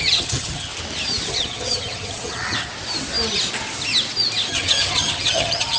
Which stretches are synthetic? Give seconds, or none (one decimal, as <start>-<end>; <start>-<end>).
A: 0.0-0.7; 1.3-2.7; 4.5-5.8